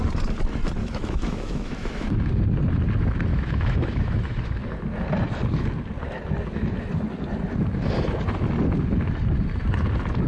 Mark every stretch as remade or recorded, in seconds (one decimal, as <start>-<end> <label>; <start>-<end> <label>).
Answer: 0.0-0.8 recorded; 0.8-2.4 remade; 2.4-3.3 recorded; 3.3-4.6 remade; 4.6-10.3 recorded